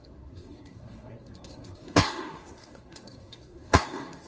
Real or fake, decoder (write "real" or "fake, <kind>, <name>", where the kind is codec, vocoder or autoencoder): fake, codec, SNAC